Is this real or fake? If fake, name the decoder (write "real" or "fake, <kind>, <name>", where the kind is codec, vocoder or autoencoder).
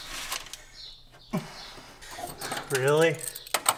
real